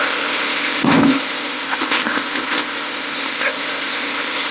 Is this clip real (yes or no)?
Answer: no